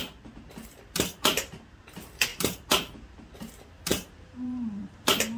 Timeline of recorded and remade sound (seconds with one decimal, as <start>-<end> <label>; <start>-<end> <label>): 0.0-0.8 remade; 0.8-1.3 recorded; 1.3-1.8 remade; 1.8-2.3 recorded; 2.3-3.5 remade; 3.5-3.9 recorded; 3.9-4.8 remade; 4.8-5.4 recorded